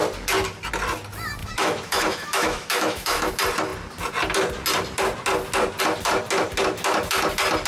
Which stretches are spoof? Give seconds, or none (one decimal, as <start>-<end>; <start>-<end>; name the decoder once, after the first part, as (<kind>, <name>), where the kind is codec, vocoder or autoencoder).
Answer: 1.4-3.3 (autoencoder, DAC-VAE)